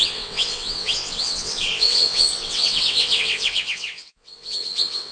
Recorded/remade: remade